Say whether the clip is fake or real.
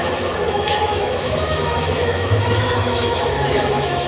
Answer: fake